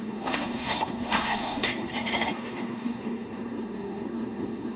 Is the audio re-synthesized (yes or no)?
yes